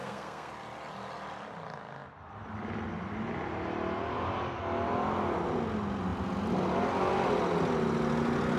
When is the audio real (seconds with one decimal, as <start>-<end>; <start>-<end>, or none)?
0.5-8.6